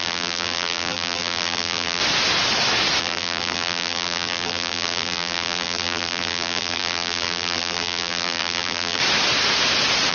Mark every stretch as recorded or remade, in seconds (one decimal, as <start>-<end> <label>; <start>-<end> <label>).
0.0-2.0 remade; 2.0-3.0 recorded; 3.0-9.0 remade; 9.0-10.1 recorded